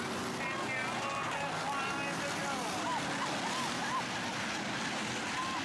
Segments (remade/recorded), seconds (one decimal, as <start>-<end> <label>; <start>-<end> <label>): 0.0-5.6 recorded